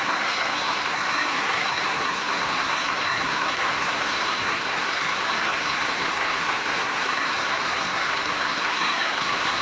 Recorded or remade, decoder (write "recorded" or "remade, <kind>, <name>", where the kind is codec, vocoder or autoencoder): remade, codec, SNAC